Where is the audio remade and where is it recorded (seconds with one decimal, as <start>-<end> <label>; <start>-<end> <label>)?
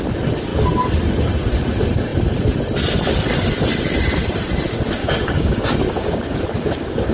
0.0-5.0 recorded; 5.0-7.1 remade